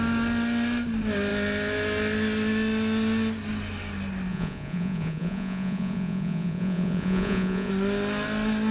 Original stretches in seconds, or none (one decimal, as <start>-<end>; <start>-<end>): 0.0-4.3; 7.7-8.7